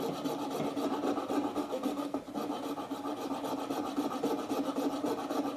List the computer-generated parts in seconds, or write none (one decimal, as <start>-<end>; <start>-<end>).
1.6-2.2